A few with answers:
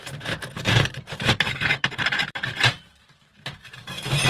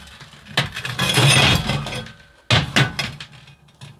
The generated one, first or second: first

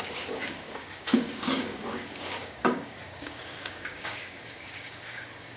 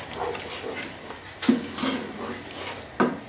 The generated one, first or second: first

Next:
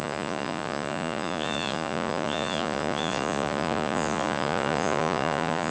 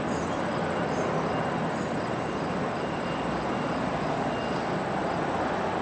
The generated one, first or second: first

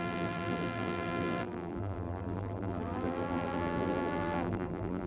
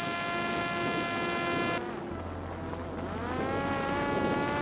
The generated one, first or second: first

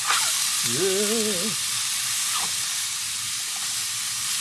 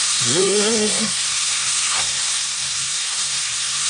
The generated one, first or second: second